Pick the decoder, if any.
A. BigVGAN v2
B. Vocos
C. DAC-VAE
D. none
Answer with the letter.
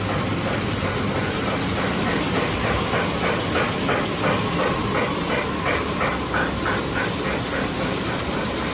D